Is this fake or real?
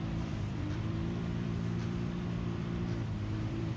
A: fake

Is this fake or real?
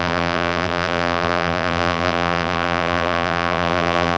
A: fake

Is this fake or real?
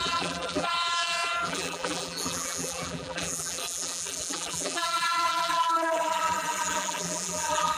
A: fake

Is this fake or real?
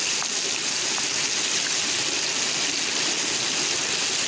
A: real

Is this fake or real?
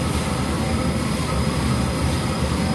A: fake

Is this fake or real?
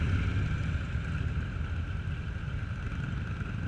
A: real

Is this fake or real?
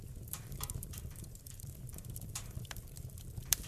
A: fake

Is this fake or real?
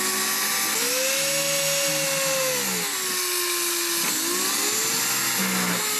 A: real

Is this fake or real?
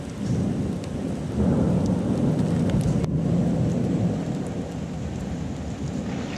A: real